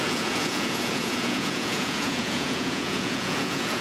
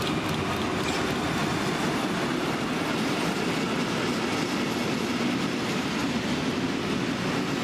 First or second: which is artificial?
first